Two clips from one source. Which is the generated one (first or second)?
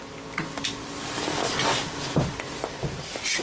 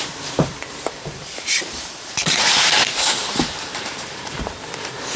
second